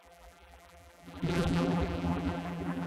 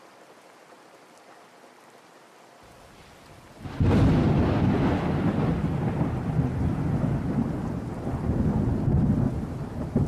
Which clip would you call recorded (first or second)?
second